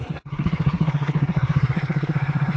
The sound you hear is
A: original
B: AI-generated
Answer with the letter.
B